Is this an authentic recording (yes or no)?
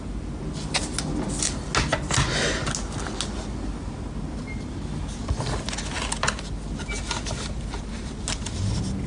yes